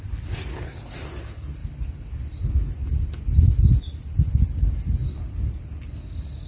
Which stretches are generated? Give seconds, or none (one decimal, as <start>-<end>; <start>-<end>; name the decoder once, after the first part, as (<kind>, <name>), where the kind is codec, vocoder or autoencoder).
none